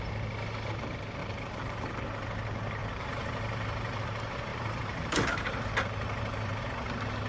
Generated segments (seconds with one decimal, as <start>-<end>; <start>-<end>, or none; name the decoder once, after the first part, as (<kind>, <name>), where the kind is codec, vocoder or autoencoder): 1.2-1.9 (vocoder, BigVGAN v2); 2.8-4.0; 4.5-6.6